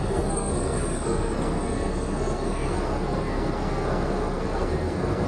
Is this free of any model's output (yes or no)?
no